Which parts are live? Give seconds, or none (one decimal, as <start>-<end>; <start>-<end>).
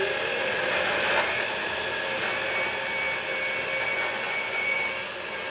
0.0-3.9; 4.8-5.5